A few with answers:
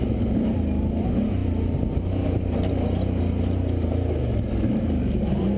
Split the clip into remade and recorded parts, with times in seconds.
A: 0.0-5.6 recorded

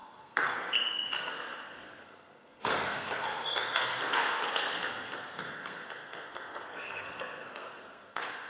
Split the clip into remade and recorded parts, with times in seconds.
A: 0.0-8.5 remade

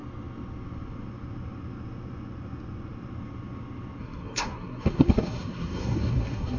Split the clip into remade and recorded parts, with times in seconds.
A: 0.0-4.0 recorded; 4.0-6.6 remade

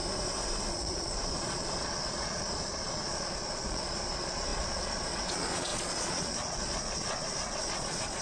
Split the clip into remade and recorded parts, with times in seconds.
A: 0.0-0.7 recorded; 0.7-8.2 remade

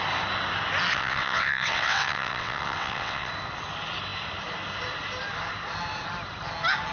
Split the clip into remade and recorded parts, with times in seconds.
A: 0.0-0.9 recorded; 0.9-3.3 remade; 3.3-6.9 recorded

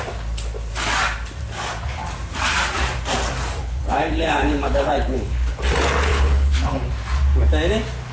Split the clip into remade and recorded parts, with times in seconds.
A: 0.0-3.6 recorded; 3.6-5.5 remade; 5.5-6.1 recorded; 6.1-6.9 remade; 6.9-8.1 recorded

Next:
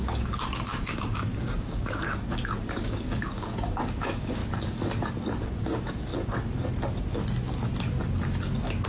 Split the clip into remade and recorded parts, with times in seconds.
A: 0.0-4.4 remade; 4.4-5.4 recorded; 5.4-6.1 remade; 6.1-8.9 recorded